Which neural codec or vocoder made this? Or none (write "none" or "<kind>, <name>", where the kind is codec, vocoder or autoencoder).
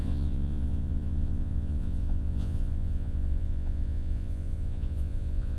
vocoder, Vocos